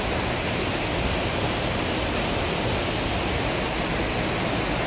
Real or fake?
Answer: real